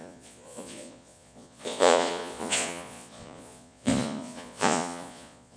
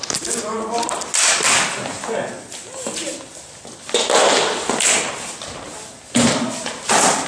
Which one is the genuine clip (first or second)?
second